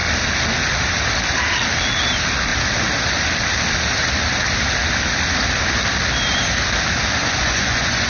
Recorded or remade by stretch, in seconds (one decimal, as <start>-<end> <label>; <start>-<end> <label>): 0.0-7.2 recorded; 7.2-8.1 remade